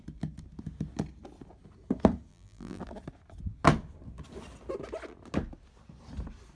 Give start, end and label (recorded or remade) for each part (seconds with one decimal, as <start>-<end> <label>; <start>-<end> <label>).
0.0-2.3 recorded; 2.3-2.8 remade; 2.8-6.5 recorded